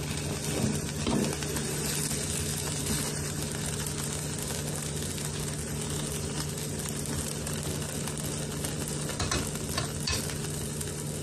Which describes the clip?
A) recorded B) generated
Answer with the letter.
A